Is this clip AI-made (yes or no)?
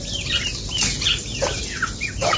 no